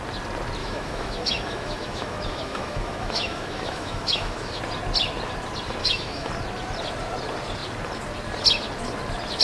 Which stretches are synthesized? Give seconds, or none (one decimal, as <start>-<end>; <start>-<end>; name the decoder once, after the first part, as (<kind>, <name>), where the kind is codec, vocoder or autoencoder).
0.6-4.6 (autoencoder, DAC-VAE); 5.8-6.3